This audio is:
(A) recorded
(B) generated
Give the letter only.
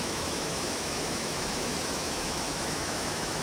B